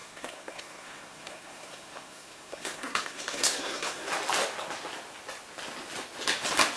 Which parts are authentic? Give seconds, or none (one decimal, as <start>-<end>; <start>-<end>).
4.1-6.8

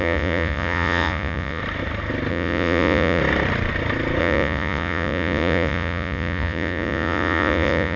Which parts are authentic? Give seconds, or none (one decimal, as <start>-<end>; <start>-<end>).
1.6-2.3; 3.2-4.2

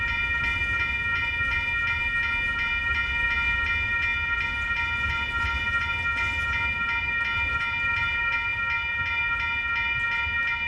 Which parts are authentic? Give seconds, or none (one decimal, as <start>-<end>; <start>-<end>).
0.0-10.7

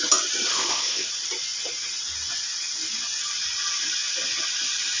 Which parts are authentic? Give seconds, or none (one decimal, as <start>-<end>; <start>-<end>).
0.0-0.5; 1.1-5.0

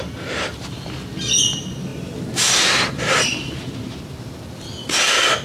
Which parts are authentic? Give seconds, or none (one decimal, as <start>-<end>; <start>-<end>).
0.0-1.9; 4.0-5.4